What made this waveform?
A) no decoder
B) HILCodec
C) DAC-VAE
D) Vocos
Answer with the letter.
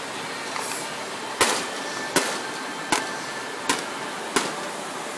A